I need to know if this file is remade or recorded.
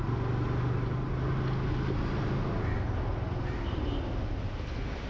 recorded